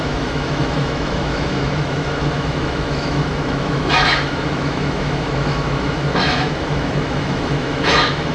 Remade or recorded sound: remade